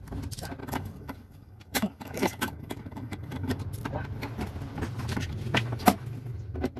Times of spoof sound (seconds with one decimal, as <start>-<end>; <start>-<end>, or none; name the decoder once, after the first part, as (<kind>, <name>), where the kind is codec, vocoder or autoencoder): 0.6-3.6 (codec, DAC)